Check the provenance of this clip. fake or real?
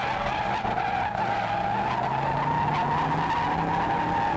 real